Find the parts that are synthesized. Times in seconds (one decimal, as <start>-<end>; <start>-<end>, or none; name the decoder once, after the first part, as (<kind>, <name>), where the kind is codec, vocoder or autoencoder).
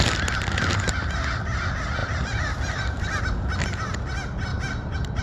2.0-3.2 (vocoder, BigVGAN v2)